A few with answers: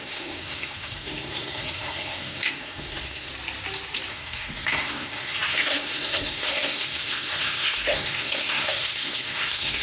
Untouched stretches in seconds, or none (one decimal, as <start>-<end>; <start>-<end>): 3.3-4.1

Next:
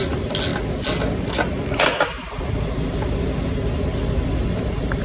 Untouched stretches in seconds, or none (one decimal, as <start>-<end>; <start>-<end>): 0.0-5.0

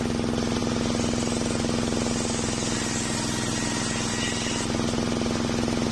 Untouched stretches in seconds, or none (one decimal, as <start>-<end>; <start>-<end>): 0.0-5.9

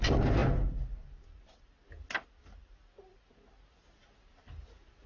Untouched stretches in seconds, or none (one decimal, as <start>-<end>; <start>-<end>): 0.0-5.1

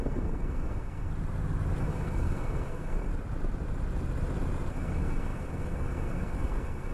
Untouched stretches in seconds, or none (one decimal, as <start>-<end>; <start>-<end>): 1.1-1.8; 3.1-4.7

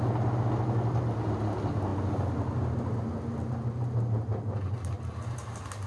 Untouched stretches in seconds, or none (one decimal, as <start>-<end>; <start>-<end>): 0.0-5.9